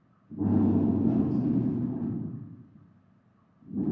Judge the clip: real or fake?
real